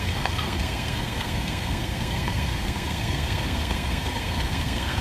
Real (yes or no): no